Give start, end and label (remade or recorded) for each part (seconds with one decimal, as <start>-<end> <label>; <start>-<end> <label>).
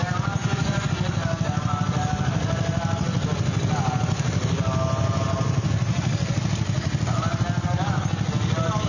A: 0.0-0.4 recorded; 0.4-0.9 remade; 0.9-8.9 recorded